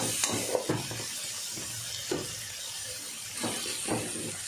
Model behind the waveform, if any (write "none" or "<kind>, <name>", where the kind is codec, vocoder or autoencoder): none